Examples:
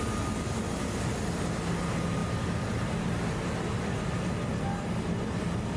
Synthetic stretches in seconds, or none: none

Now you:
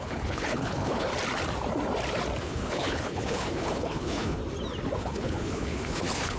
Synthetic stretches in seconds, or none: 0.0-1.1; 2.4-4.4; 5.0-6.4